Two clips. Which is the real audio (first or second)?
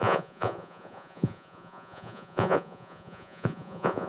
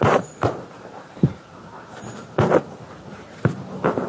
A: second